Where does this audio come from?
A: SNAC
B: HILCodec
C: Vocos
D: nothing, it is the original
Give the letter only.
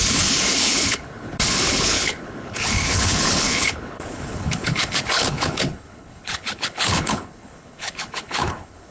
B